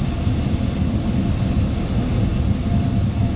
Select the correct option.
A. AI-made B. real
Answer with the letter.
B